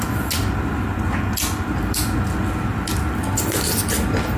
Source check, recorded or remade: recorded